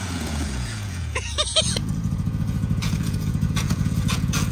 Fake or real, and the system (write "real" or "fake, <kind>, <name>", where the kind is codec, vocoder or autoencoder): fake, vocoder, Vocos